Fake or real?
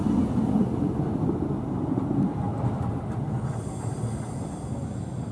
real